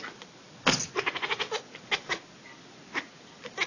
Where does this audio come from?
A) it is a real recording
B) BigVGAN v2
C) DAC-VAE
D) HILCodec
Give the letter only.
A